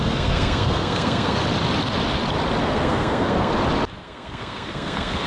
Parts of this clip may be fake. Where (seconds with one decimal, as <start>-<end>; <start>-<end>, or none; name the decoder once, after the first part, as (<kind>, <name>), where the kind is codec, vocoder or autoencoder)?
0.0-1.4 (codec, SNAC); 2.6-3.5; 4.0-5.3